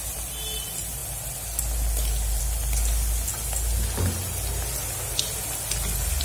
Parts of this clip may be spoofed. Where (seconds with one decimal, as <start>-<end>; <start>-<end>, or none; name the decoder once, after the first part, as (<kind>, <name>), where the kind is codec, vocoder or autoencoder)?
none